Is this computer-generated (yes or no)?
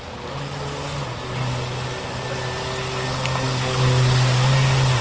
no